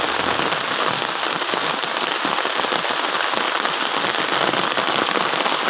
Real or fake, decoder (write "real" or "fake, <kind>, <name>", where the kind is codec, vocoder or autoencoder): real